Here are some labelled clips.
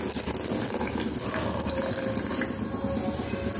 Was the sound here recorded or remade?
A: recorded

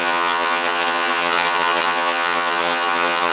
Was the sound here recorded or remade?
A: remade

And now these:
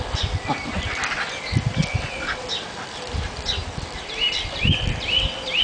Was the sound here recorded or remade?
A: remade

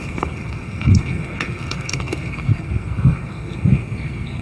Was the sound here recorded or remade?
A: remade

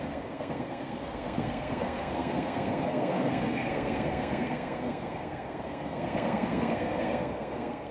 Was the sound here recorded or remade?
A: remade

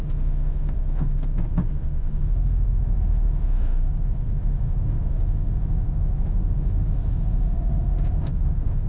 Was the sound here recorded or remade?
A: remade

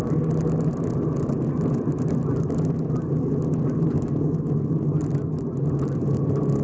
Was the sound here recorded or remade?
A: recorded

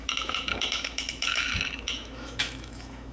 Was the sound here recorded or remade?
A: remade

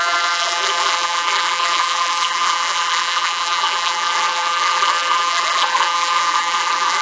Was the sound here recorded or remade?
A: remade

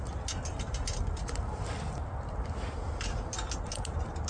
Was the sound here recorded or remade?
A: recorded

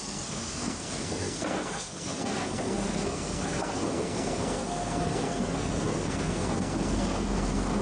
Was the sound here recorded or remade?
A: remade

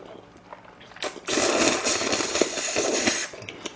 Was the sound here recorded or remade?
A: recorded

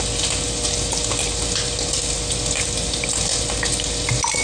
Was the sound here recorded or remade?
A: recorded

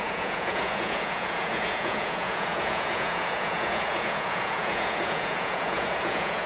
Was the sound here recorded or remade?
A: remade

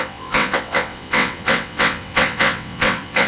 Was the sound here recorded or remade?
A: remade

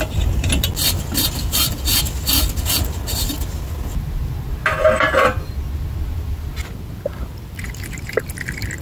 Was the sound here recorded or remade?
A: recorded